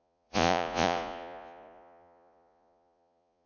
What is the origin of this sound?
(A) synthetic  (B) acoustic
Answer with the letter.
A